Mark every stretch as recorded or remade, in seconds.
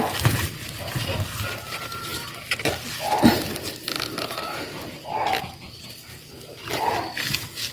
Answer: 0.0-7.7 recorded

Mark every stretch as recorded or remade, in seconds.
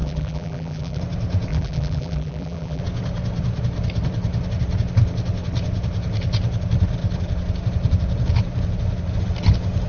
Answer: 0.0-1.0 remade; 1.0-1.5 recorded; 1.5-2.8 remade; 2.8-9.9 recorded